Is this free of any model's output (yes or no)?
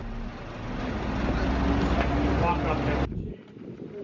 yes